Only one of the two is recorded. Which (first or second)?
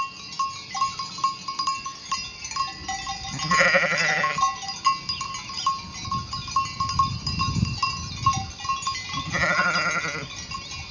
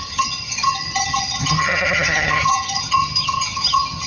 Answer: first